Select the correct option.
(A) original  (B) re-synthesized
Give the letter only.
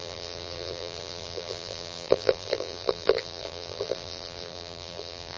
B